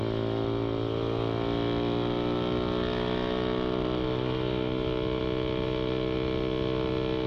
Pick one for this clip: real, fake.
real